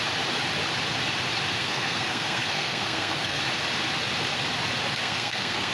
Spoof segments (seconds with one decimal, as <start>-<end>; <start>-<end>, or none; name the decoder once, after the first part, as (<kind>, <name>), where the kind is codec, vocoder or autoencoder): 1.6-3.4 (codec, SNAC); 5.0-5.7